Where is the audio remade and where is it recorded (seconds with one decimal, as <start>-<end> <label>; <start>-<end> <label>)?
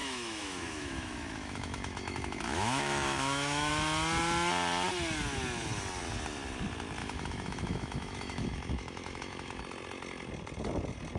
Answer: 0.0-3.7 remade; 3.7-7.0 recorded; 7.0-9.6 remade; 9.6-11.2 recorded